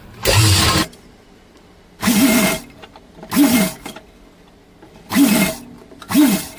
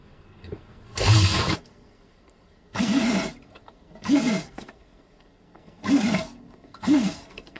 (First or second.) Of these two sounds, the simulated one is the second